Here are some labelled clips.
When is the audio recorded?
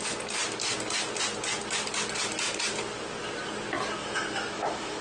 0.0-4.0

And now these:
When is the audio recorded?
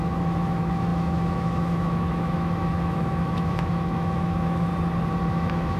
4.7-5.3